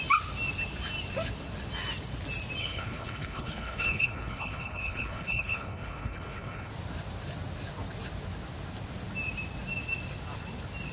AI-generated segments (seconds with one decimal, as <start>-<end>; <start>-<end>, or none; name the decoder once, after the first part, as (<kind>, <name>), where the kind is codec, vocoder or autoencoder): 2.6-6.7 (codec, HILCodec)